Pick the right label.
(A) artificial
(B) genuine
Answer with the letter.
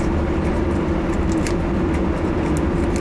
B